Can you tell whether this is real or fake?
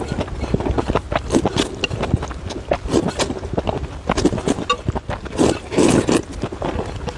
real